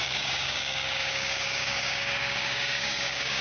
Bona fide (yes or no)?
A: no